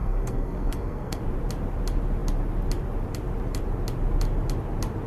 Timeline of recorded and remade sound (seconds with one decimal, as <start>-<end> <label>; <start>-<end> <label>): 0.0-1.2 remade; 1.2-5.1 recorded